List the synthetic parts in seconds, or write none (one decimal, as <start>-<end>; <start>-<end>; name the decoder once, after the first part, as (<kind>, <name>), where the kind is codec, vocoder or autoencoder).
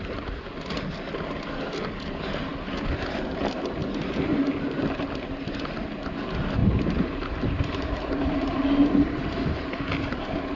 6.6-9.6 (vocoder, BigVGAN v2)